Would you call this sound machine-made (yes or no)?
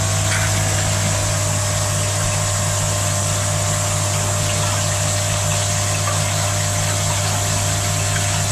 no